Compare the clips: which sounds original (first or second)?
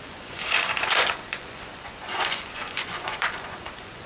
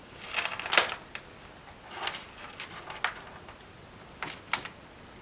second